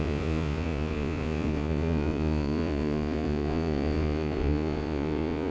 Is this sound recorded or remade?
remade